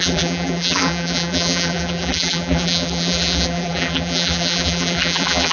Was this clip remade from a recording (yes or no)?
yes